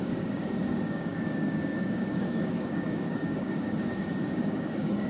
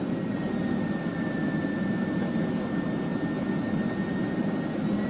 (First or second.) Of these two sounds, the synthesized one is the first